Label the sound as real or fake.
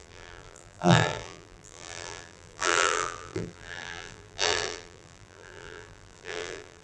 fake